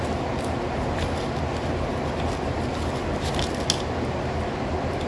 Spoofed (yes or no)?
no